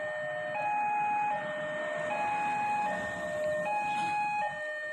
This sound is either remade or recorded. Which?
recorded